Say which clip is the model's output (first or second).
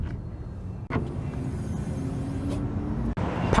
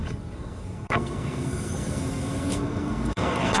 second